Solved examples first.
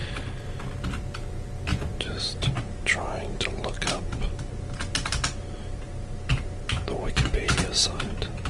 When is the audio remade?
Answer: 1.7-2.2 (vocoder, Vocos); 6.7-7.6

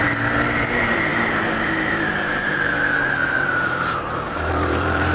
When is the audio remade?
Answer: 0.0-5.1 (vocoder, BigVGAN v2)